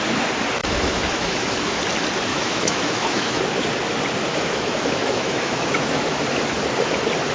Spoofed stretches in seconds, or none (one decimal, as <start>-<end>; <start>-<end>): 0.6-1.8; 2.3-3.4; 4.3-6.2